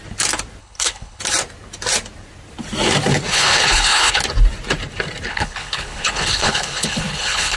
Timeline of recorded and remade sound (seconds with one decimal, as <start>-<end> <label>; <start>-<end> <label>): 0.0-0.6 recorded; 0.6-1.2 remade; 1.2-3.3 recorded; 3.3-4.2 remade; 4.2-5.3 recorded; 5.3-7.6 remade